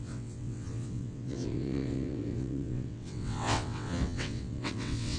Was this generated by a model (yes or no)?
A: yes